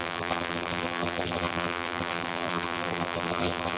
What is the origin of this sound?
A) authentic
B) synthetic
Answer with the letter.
B